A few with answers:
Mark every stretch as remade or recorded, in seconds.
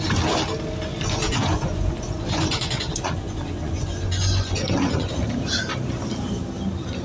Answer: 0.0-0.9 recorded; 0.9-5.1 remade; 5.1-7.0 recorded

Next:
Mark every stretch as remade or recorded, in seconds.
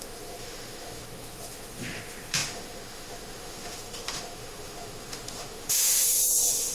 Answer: 0.0-6.7 remade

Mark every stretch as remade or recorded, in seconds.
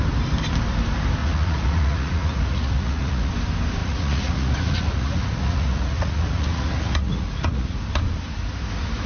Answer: 0.0-1.2 recorded; 1.2-3.3 remade; 3.3-3.8 recorded; 3.8-7.8 remade; 7.8-9.1 recorded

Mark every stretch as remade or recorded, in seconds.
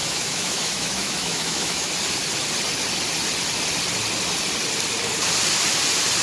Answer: 0.0-1.9 remade; 1.9-6.2 recorded